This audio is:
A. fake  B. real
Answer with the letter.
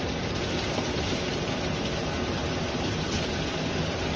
B